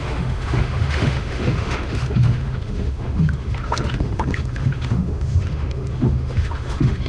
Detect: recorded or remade remade